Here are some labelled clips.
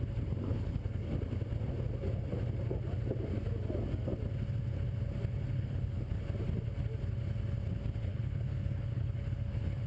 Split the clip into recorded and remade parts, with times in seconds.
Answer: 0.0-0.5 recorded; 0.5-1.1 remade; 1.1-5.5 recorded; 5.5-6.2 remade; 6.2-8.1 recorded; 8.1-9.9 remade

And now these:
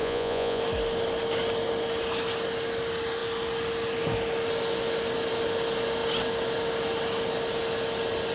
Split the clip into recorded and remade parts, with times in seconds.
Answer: 0.0-0.6 remade; 0.6-8.3 recorded

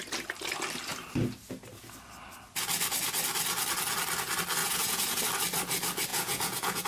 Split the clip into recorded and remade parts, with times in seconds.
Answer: 0.0-4.6 recorded; 4.6-5.2 remade; 5.2-6.1 recorded; 6.1-6.9 remade

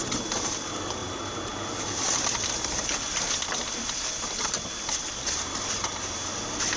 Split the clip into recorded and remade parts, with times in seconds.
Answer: 0.0-1.0 remade; 1.0-5.1 recorded; 5.1-6.8 remade

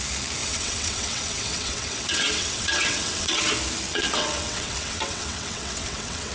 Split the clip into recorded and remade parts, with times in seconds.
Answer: 0.0-0.4 recorded; 0.4-3.4 remade; 3.4-3.9 recorded; 3.9-6.3 remade

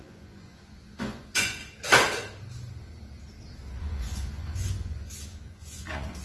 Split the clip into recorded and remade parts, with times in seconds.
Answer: 0.0-1.6 remade; 1.6-3.8 recorded; 3.8-6.2 remade

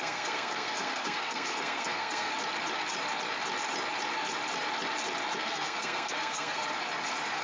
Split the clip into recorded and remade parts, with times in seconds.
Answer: 0.0-2.3 remade; 2.3-5.4 recorded; 5.4-6.6 remade; 6.6-7.4 recorded